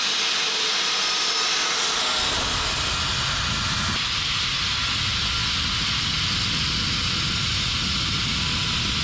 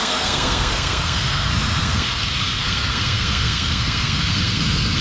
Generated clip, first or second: second